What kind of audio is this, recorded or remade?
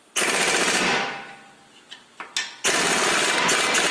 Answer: recorded